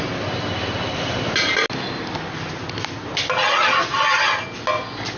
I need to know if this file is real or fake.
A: real